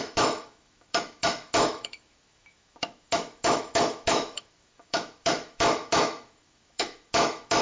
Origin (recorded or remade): remade